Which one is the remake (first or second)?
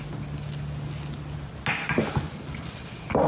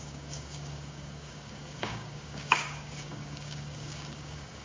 second